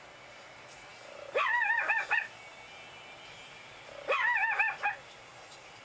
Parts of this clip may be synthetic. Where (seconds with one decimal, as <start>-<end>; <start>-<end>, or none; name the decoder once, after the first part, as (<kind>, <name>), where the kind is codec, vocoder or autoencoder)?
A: none